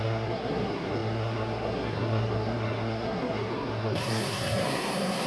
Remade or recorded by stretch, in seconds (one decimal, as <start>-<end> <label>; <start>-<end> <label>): 0.0-5.3 remade